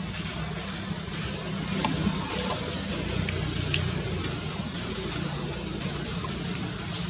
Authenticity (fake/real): real